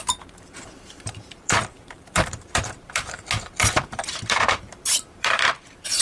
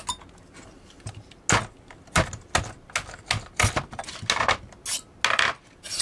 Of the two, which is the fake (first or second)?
first